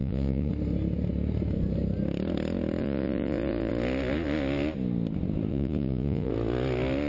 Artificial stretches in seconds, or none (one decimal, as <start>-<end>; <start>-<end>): 0.0-0.5; 2.8-3.7; 5.5-6.3